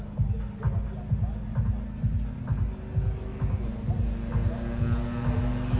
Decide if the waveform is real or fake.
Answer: real